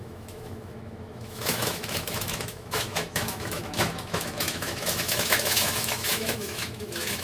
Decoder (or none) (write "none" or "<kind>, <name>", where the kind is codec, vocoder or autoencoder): autoencoder, DAC-VAE